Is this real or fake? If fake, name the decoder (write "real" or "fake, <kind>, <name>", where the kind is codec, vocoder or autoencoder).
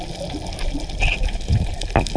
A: real